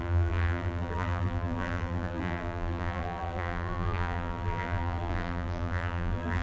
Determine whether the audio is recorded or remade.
remade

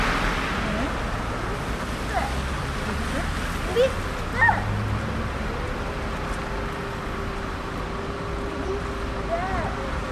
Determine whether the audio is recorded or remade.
recorded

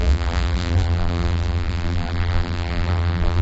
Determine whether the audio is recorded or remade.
remade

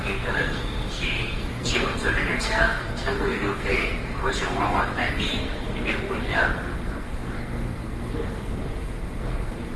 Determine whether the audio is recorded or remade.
remade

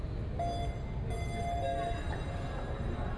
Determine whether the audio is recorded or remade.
recorded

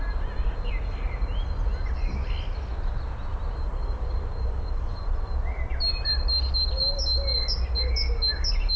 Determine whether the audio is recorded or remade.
recorded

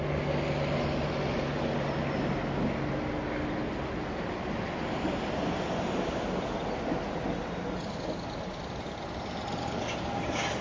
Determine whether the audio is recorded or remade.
recorded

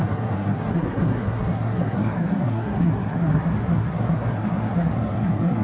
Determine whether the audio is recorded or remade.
remade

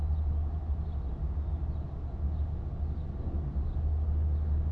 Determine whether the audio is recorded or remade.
recorded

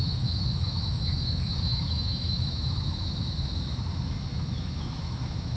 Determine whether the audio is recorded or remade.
remade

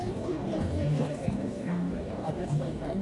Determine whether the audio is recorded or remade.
remade